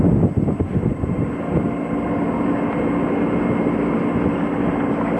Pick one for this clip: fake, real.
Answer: real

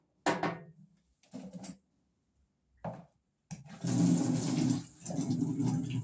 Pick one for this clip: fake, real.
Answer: real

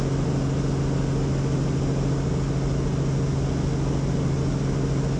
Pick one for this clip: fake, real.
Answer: real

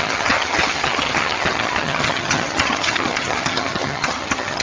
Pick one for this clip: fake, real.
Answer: fake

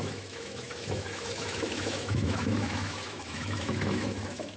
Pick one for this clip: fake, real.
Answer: fake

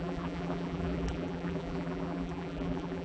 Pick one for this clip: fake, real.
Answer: fake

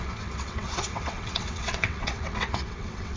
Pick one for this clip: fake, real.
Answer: fake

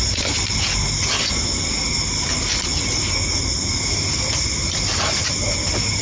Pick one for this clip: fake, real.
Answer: real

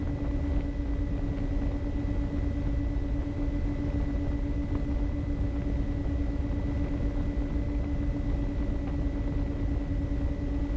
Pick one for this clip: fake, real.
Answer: real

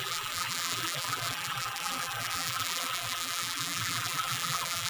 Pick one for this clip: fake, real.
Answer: fake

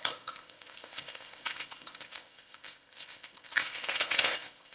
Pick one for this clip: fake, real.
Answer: fake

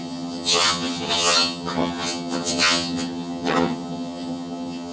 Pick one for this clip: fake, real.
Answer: fake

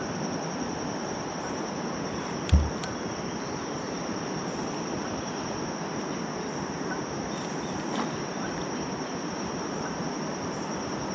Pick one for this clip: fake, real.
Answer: real